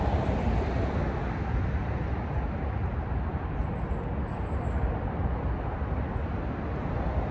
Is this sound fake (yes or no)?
no